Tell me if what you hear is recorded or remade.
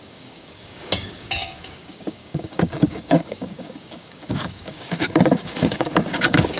remade